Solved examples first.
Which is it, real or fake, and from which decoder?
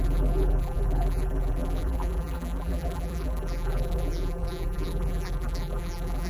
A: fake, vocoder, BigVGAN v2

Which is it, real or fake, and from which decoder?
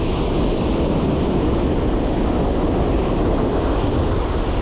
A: real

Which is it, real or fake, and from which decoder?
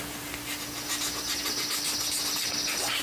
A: real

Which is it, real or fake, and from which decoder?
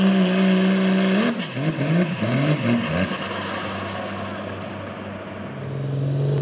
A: real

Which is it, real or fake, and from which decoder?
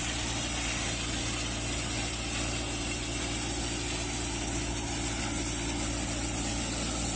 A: real